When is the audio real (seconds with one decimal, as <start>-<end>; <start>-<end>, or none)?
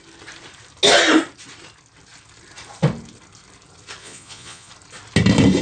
0.0-4.0; 4.7-5.6